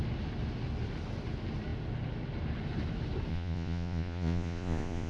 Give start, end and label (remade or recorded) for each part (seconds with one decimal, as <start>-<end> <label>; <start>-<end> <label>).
0.0-3.3 recorded; 3.3-5.1 remade